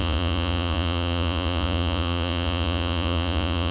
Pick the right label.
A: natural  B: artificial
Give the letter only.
B